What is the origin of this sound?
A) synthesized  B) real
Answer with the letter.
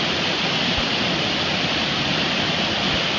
B